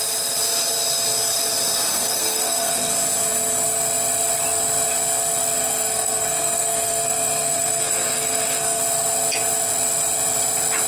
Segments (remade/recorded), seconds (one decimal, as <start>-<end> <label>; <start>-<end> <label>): 0.0-1.9 recorded; 1.9-2.9 remade; 2.9-5.6 recorded; 5.6-8.8 remade; 8.8-10.9 recorded